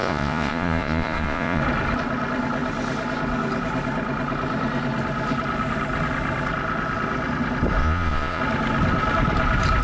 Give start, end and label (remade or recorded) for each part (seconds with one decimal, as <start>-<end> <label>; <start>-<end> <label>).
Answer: 0.0-1.6 remade; 1.6-7.8 recorded; 7.8-8.4 remade; 8.4-9.8 recorded